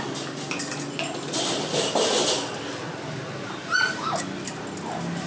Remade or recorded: recorded